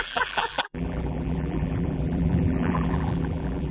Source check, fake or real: fake